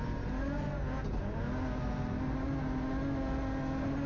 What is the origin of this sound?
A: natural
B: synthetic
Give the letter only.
A